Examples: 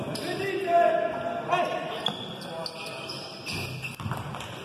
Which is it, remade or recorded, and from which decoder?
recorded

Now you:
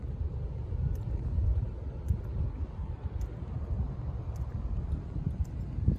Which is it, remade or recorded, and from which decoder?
recorded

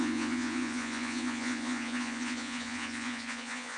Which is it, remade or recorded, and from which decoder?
remade, vocoder, Vocos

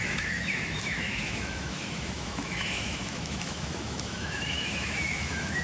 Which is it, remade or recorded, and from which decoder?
remade, autoencoder, DAC-VAE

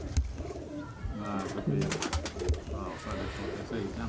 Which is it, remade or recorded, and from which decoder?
recorded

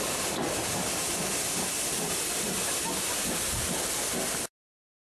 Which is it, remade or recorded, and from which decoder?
recorded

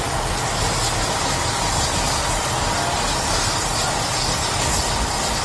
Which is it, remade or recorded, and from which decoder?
recorded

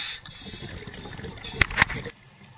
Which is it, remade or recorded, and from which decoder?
recorded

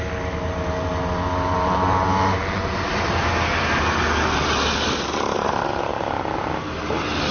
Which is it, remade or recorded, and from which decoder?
recorded